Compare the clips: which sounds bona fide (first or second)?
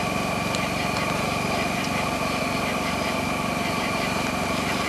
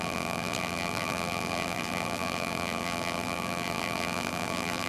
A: first